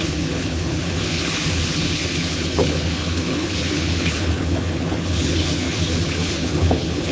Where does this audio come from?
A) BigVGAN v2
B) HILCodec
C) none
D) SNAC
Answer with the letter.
B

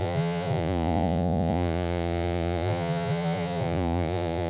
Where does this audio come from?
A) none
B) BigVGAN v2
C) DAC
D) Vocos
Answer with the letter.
D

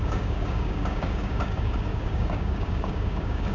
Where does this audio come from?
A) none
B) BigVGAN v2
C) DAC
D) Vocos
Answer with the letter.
C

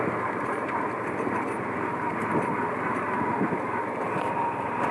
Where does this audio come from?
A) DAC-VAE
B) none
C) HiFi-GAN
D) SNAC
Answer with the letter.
B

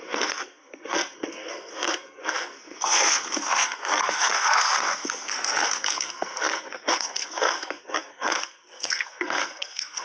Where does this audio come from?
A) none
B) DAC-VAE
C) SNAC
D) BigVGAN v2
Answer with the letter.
C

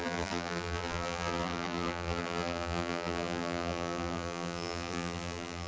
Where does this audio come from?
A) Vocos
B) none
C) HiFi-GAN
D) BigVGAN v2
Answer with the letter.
D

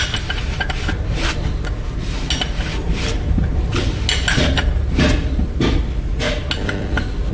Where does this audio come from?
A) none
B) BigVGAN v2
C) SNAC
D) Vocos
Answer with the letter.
A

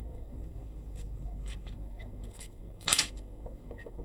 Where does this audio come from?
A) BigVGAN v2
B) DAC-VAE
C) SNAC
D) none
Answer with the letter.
C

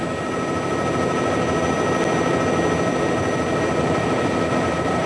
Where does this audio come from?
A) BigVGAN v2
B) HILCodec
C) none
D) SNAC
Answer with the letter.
C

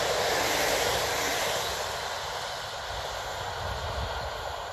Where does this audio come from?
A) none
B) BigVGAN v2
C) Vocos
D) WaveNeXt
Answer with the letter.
A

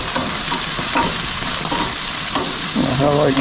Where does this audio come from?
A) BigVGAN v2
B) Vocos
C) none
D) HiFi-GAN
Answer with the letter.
C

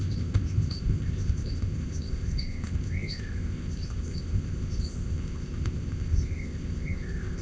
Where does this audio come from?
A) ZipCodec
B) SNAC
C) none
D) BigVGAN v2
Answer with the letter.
A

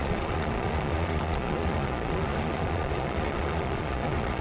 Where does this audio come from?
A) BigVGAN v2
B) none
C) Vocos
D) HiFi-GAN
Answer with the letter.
C